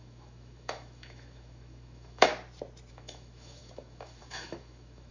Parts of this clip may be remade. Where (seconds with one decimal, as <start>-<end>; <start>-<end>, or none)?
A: 0.0-2.3; 2.9-5.1